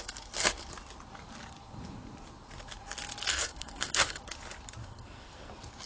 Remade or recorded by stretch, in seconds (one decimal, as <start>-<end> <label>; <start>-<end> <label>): 0.0-3.3 recorded; 3.3-4.2 remade; 4.2-4.8 recorded; 4.8-5.5 remade; 5.5-5.9 recorded